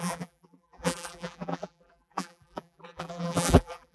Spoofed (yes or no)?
yes